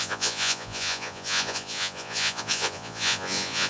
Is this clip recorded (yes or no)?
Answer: no